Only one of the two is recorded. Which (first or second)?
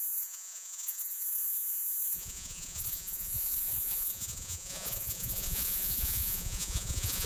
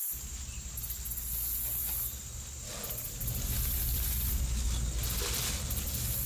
second